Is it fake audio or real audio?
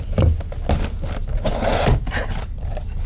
real